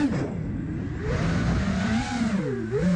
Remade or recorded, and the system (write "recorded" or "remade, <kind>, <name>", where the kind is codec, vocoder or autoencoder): remade, vocoder, BigVGAN v2